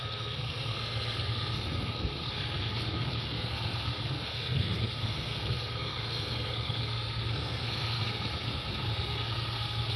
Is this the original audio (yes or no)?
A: no